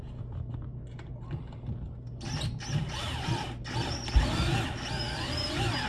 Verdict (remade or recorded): recorded